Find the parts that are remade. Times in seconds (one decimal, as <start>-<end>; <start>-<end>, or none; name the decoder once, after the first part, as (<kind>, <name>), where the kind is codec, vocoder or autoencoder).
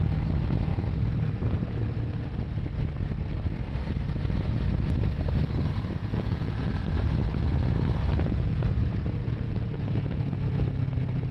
6.0-6.7 (vocoder, Vocos); 8.1-8.6; 9.2-11.3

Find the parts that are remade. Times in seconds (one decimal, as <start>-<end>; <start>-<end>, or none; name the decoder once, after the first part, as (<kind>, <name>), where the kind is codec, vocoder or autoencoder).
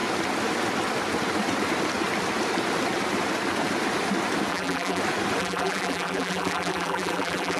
4.5-5.0 (vocoder, BigVGAN v2); 5.4-7.6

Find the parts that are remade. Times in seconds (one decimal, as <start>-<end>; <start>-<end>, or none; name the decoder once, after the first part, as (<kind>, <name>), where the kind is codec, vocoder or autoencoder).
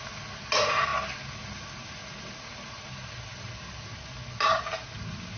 none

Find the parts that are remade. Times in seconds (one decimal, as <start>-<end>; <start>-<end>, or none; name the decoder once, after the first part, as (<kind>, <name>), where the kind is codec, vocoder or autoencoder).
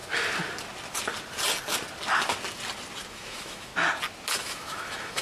3.1-3.7 (autoencoder, DAC-VAE); 4.4-5.2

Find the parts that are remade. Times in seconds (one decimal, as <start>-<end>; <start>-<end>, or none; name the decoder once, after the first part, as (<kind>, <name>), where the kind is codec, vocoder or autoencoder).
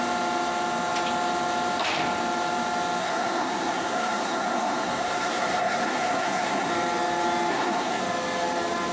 3.0-6.7 (codec, SNAC); 7.5-8.0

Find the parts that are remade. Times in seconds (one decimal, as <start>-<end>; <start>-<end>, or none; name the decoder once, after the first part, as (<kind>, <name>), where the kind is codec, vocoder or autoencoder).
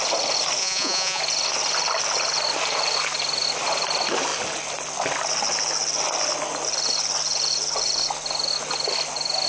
0.6-1.2 (vocoder, Vocos)